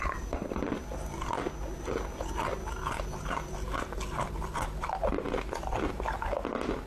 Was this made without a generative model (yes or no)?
yes